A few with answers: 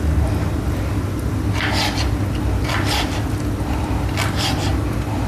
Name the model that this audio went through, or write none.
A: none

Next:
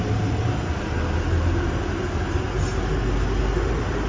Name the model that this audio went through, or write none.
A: none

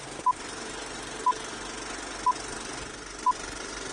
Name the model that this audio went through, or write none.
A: none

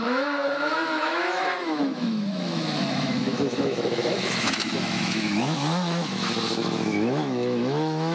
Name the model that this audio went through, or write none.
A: autoencoder, DAC-VAE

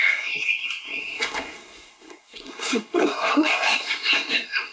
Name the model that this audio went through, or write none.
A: codec, SNAC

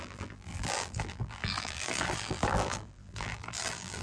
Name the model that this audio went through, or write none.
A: vocoder, BigVGAN v2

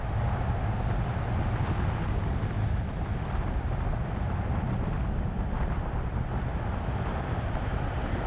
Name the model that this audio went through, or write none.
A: none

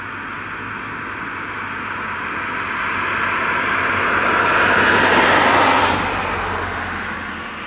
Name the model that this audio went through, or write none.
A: none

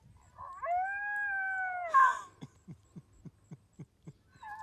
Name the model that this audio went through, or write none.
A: none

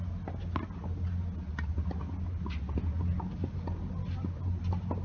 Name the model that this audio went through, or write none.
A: none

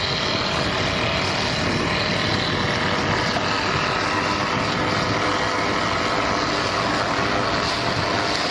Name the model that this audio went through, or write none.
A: none